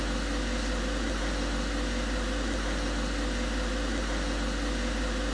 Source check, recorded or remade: recorded